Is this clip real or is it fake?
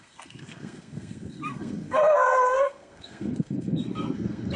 fake